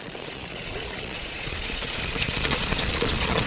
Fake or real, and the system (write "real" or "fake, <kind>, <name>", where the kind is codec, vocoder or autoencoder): fake, vocoder, Vocos